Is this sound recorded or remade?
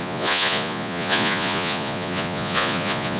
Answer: remade